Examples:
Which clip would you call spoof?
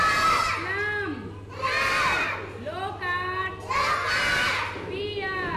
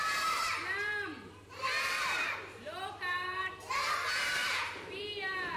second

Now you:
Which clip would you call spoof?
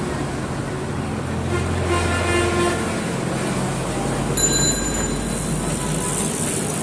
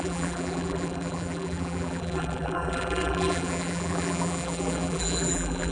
second